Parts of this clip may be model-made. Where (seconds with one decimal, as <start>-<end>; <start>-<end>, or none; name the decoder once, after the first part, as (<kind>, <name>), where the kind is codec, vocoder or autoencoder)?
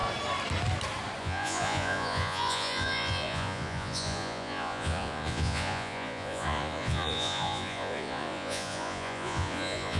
1.2-10.0 (vocoder, Vocos)